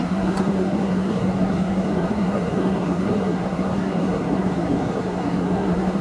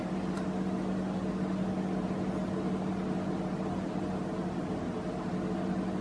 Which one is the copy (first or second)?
first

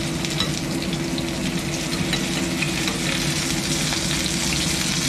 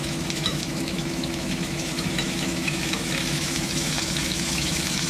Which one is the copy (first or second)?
second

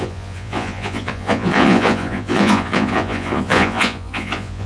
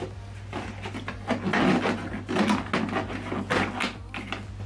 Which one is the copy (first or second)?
first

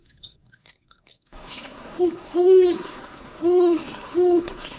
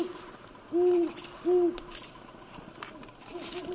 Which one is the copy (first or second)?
first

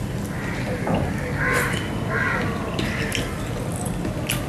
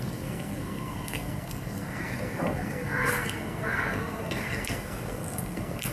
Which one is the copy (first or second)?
second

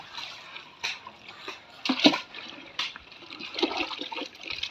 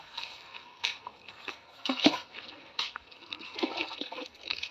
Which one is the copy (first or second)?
second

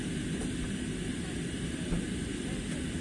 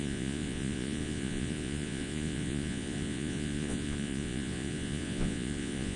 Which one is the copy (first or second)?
second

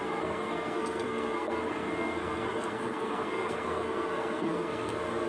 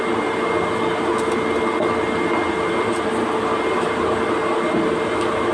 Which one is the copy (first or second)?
first